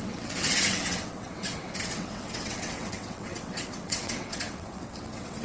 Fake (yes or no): yes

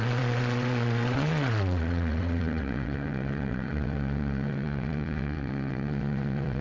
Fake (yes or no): yes